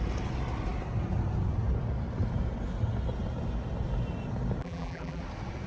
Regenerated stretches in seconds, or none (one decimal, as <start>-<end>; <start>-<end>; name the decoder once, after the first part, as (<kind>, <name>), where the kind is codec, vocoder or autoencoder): 4.6-5.2 (vocoder, BigVGAN v2)